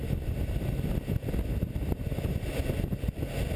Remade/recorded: recorded